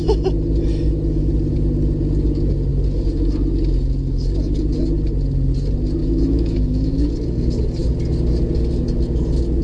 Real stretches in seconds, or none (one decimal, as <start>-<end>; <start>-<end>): 0.0-6.0; 7.1-9.6